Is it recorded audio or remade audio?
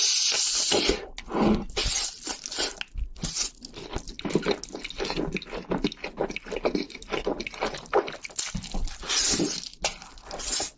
recorded